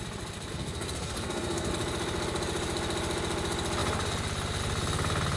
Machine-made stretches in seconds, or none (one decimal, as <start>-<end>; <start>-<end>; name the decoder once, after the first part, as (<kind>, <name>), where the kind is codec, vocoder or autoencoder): 0.5-1.7 (codec, SNAC)